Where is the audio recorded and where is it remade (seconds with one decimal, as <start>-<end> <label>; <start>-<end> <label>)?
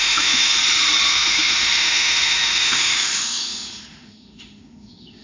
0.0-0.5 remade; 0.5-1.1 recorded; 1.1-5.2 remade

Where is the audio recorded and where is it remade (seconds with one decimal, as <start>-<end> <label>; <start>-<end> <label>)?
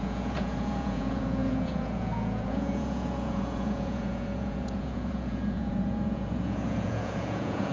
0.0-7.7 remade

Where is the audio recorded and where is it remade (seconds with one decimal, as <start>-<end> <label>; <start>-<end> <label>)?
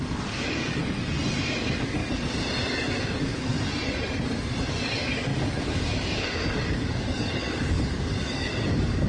0.0-0.8 remade; 0.8-1.4 recorded; 1.4-2.0 remade; 2.0-3.0 recorded; 3.0-3.5 remade; 3.5-4.7 recorded; 4.7-9.1 remade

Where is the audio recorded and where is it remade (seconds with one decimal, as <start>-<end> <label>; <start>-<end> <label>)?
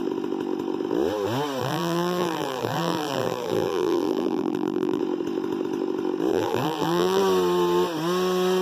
0.0-1.6 recorded; 1.6-5.0 remade; 5.0-6.3 recorded; 6.3-7.2 remade; 7.2-8.6 recorded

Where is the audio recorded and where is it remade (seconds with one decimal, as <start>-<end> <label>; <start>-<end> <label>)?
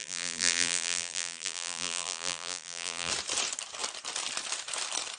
0.0-3.1 remade; 3.1-5.2 recorded